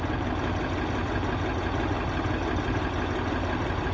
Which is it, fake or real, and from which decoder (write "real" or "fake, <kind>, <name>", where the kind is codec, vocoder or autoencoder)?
real